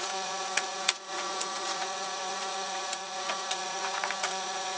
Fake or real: fake